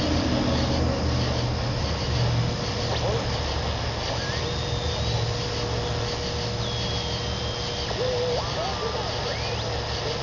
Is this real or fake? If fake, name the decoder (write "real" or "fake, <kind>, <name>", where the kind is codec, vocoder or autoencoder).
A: real